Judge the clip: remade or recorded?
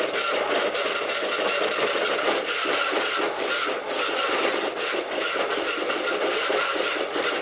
remade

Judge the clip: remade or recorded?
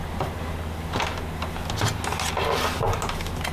recorded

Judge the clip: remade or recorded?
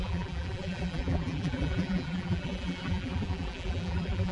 remade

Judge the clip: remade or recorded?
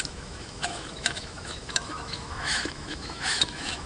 remade